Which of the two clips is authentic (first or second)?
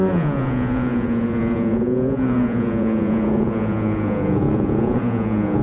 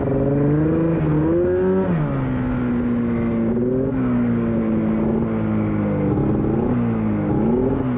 second